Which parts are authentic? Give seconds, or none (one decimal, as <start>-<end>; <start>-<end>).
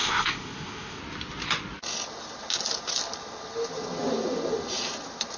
1.0-5.4